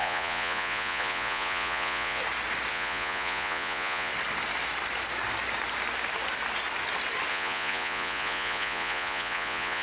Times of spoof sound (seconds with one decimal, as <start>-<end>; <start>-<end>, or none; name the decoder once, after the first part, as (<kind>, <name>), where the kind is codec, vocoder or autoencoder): 0.0-2.2 (vocoder, Vocos); 2.7-4.1; 7.3-9.8